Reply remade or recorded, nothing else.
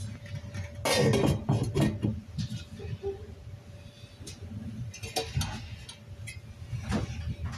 recorded